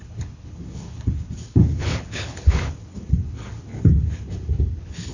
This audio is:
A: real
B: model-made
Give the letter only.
B